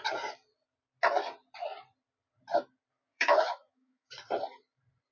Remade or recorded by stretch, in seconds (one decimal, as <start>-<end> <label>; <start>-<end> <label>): 0.0-3.1 recorded; 3.1-4.2 remade; 4.2-5.1 recorded